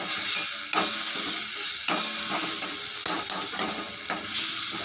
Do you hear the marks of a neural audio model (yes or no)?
no